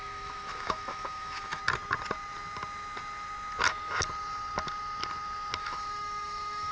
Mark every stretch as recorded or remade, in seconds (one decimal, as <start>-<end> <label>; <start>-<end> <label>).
0.0-1.6 remade; 1.6-5.6 recorded; 5.6-6.7 remade